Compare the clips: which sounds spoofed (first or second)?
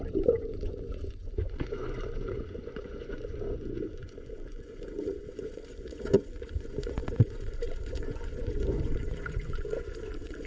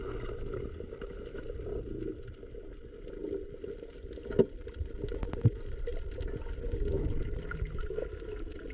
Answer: first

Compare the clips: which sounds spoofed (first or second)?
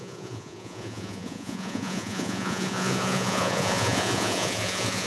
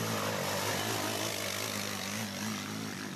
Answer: first